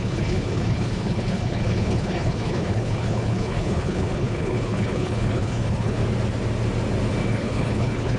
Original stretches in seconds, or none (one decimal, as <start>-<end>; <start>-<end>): 6.0-7.3